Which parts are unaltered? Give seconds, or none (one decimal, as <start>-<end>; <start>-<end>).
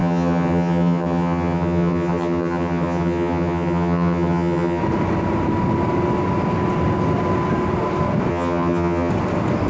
4.8-8.3; 9.1-9.7